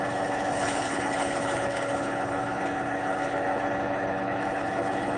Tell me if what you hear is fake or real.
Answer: fake